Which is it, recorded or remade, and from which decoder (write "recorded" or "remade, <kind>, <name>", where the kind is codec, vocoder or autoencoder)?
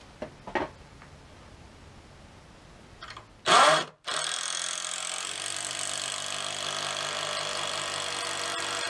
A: recorded